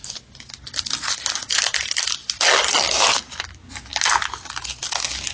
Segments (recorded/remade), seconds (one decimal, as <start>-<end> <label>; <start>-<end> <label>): 0.0-5.3 recorded